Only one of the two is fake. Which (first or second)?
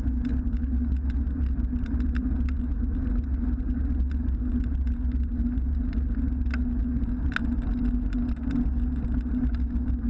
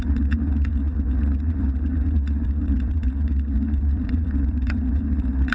second